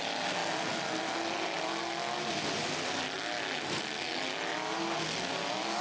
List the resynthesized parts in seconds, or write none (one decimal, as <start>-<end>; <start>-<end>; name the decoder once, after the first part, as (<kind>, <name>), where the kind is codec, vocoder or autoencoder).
none